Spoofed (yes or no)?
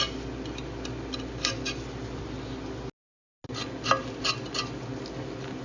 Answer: no